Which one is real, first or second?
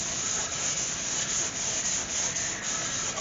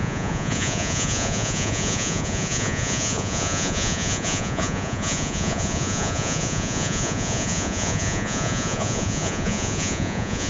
first